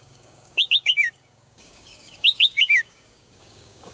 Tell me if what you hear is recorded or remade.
remade